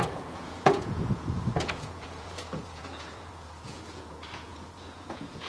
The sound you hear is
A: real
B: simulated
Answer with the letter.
B